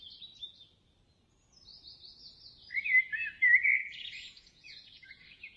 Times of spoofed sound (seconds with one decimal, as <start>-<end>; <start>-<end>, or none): 3.8-5.6